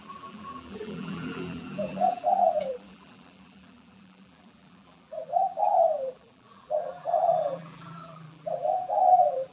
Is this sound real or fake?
fake